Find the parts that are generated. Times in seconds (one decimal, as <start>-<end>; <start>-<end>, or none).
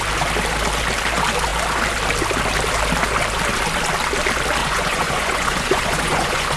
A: 4.6-6.6